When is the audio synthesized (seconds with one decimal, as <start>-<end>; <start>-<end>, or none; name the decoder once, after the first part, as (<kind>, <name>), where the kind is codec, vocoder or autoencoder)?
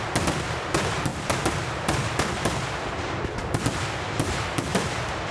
none